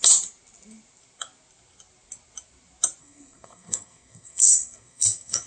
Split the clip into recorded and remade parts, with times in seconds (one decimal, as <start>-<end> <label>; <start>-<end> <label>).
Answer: 0.0-3.0 recorded; 3.0-5.5 remade